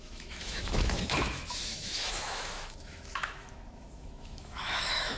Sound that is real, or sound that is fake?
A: fake